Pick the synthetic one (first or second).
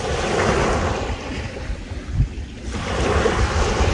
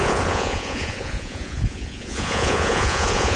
second